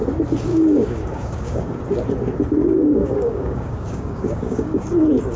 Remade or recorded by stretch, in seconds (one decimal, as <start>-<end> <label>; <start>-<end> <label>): 0.0-0.5 recorded; 0.5-1.8 remade; 1.8-2.6 recorded; 2.6-4.8 remade; 4.8-5.4 recorded